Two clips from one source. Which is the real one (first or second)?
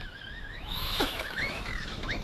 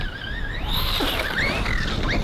second